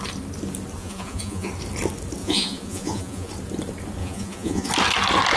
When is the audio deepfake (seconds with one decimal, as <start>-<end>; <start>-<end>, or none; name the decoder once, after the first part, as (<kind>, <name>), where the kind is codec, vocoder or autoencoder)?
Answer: 0.8-1.5 (vocoder, Vocos); 2.2-3.3; 4.0-4.7